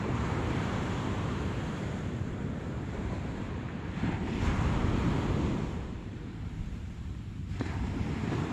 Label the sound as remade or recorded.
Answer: remade